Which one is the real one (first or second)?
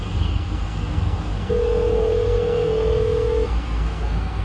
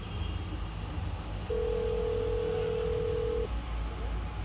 second